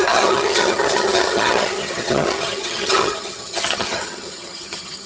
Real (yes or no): no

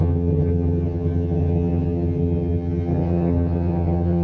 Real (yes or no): no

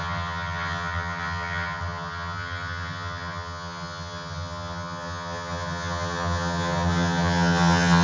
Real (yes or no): no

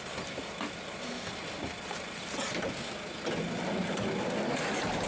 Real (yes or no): yes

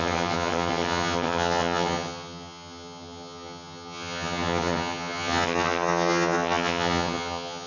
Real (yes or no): no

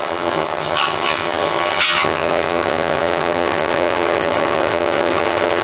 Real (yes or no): no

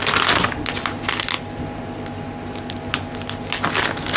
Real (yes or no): yes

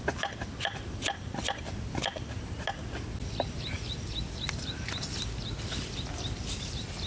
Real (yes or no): yes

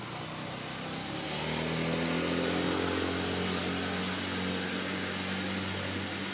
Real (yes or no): yes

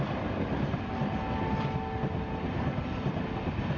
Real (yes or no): yes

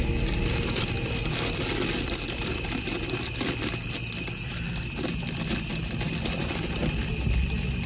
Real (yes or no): yes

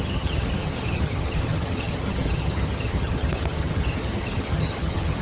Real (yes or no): no